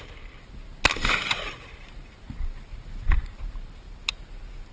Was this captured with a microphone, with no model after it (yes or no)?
yes